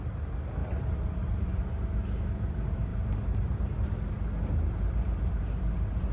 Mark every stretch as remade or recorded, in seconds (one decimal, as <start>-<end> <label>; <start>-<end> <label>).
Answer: 0.0-0.6 recorded; 0.6-1.6 remade; 1.6-2.9 recorded; 2.9-3.6 remade; 3.6-6.1 recorded